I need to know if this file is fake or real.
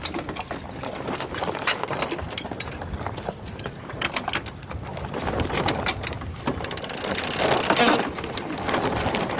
real